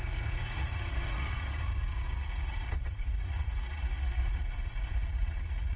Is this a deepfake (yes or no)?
yes